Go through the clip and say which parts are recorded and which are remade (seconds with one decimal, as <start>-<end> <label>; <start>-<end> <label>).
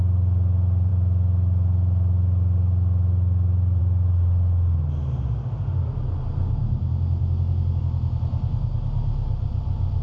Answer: 0.0-10.0 recorded